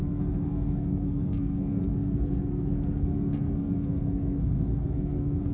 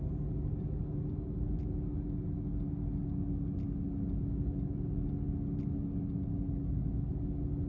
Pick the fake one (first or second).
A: first